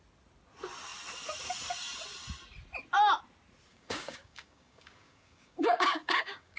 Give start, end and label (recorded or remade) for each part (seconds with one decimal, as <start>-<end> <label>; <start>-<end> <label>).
0.0-3.7 recorded; 3.7-6.6 remade